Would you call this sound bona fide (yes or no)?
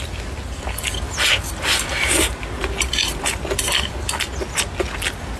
yes